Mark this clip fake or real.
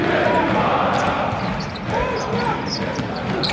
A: real